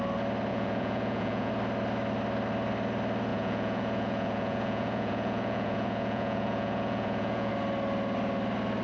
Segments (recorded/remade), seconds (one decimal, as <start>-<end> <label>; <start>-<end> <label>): 0.0-0.5 recorded; 0.5-1.5 remade; 1.5-3.3 recorded; 3.3-7.5 remade; 7.5-8.8 recorded